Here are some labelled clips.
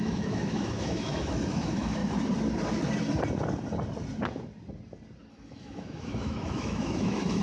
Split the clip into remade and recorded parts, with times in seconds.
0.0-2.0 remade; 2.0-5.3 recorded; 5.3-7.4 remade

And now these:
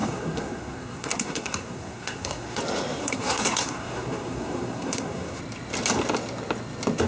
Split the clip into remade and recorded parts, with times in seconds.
0.0-2.6 remade; 2.6-3.0 recorded; 3.0-5.4 remade; 5.4-7.1 recorded

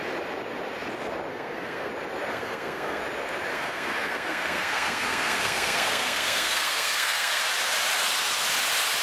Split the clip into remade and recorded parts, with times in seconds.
0.0-1.3 recorded; 1.3-1.9 remade; 1.9-2.3 recorded; 2.3-3.0 remade; 3.0-3.5 recorded; 3.5-7.4 remade; 7.4-9.0 recorded

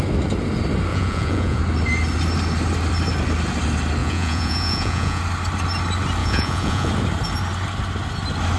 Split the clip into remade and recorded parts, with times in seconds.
0.0-0.9 recorded; 0.9-1.6 remade; 1.6-4.0 recorded; 4.0-5.2 remade; 5.2-6.2 recorded; 6.2-6.9 remade; 6.9-8.6 recorded

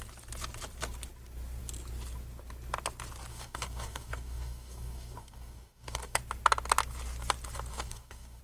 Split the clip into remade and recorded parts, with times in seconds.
0.0-3.3 recorded; 3.3-6.2 remade; 6.2-7.7 recorded; 7.7-8.4 remade

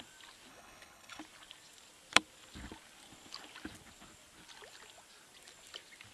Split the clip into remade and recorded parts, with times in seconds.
0.0-0.5 recorded; 0.5-1.2 remade; 1.2-6.1 recorded